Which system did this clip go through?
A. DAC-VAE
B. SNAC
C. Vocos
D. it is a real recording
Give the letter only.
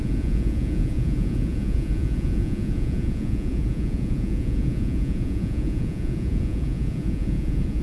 C